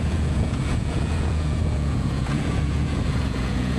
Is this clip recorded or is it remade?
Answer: remade